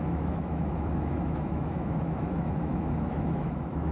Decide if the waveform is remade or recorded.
remade